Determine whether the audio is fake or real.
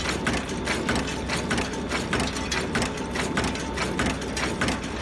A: real